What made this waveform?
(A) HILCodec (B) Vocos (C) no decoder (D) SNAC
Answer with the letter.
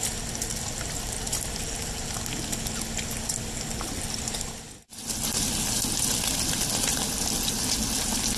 C